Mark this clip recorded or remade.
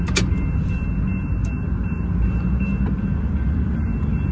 recorded